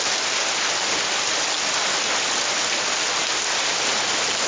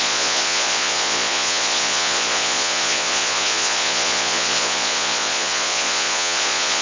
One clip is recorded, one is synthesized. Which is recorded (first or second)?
first